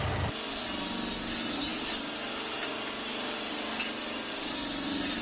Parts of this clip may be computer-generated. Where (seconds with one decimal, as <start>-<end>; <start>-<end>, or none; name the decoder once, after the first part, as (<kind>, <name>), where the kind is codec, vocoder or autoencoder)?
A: none